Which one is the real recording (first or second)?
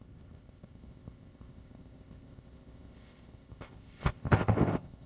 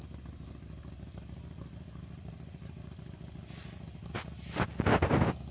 second